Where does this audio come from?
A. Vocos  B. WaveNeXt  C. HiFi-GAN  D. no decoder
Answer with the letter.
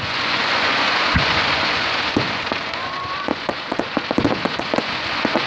A